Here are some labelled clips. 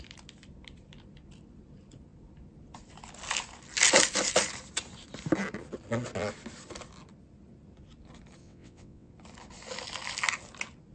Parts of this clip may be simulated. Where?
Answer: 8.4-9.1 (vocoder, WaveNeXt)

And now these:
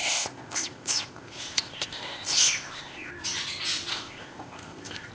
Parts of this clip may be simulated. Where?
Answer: 0.0-3.1 (codec, ZipCodec); 3.9-5.1

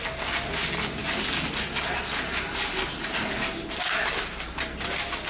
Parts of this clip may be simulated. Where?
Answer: none

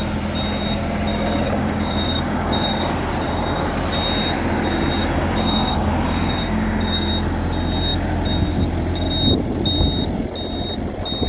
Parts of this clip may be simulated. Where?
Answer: 1.1-3.1 (codec, DAC); 5.0-7.1

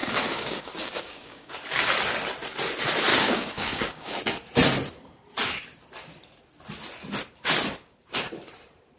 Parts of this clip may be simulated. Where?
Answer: 0.0-1.5 (codec, DAC); 3.1-4.2